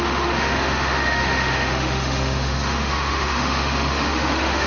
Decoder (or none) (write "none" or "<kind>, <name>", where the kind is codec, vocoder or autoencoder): autoencoder, DAC-VAE